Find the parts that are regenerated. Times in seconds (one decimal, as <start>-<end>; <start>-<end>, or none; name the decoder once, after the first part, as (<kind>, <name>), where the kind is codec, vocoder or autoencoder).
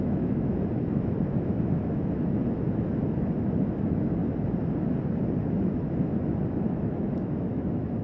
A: 0.0-4.2 (autoencoder, DAC-VAE); 5.4-8.0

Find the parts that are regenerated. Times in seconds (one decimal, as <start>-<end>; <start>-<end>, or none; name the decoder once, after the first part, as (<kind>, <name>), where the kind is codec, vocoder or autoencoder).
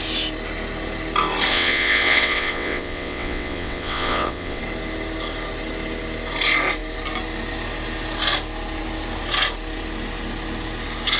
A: 1.5-4.6 (vocoder, WaveNeXt)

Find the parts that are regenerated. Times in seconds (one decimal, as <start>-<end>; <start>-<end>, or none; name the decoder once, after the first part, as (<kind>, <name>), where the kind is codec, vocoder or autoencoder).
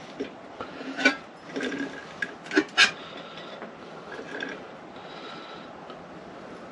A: none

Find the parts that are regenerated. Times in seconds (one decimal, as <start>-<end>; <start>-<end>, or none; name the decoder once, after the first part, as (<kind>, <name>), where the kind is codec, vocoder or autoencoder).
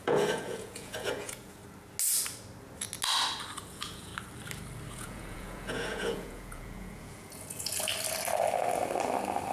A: 0.0-1.6 (vocoder, Vocos); 3.6-4.1; 4.9-7.9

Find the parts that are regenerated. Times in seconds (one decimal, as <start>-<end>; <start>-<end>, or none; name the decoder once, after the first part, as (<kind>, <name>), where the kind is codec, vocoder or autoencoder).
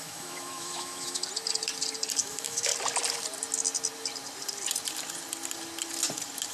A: 0.0-1.2 (autoencoder, DAC-VAE); 2.2-2.7